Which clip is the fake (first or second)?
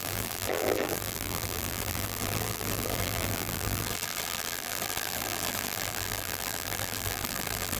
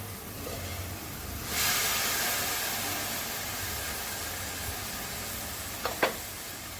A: first